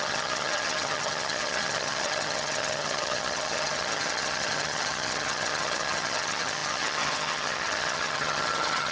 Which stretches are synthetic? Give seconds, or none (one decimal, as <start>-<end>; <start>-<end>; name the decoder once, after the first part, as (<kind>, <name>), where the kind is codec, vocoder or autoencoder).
0.0-8.9 (vocoder, HiFi-GAN)